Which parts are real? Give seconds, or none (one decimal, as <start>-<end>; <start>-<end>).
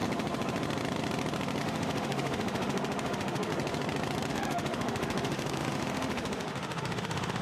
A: 0.0-1.6; 3.5-4.3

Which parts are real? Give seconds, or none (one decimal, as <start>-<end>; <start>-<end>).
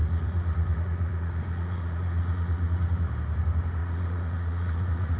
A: 3.1-3.8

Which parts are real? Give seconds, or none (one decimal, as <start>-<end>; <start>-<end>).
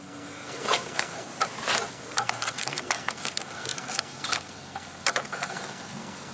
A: 1.3-1.9